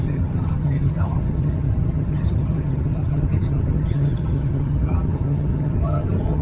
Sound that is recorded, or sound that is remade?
remade